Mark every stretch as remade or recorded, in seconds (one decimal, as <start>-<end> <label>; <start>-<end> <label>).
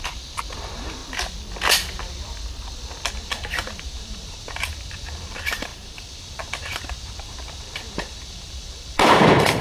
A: 0.0-1.0 remade; 1.0-3.1 recorded; 3.1-9.6 remade